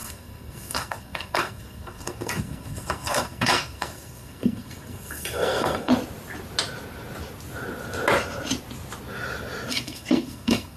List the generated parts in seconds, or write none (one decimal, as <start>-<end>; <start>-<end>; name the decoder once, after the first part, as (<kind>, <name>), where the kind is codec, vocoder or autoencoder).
0.0-5.9 (codec, SNAC); 9.7-10.8